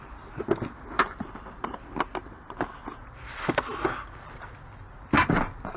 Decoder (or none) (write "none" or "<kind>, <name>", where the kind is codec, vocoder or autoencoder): none